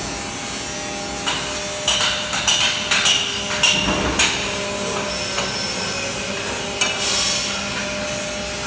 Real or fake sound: real